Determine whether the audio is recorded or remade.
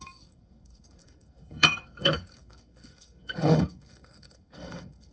remade